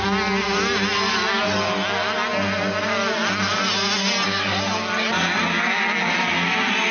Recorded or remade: recorded